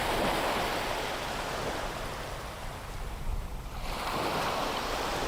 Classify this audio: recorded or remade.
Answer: remade